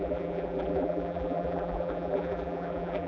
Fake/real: fake